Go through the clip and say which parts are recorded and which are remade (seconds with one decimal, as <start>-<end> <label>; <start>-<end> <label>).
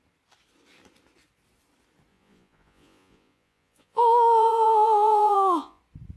0.0-2.1 recorded; 2.1-5.8 remade; 5.8-6.2 recorded